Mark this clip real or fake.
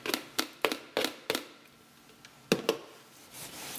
real